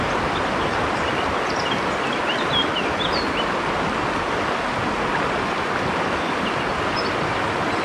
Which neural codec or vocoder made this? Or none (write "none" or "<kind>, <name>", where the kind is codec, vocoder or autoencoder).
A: none